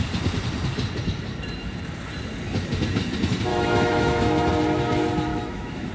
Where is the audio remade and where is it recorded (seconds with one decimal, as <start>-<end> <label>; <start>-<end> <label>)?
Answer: 0.0-3.5 recorded; 3.5-4.5 remade; 4.5-5.3 recorded; 5.3-5.9 remade